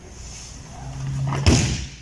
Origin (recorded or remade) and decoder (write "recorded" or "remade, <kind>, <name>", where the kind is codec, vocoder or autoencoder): recorded